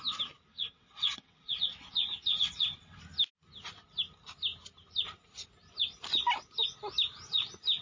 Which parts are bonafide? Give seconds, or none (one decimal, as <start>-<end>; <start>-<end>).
0.0-0.5; 3.0-7.8